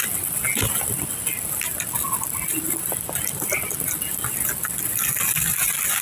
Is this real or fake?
real